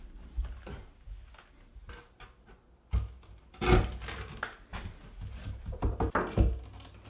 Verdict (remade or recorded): recorded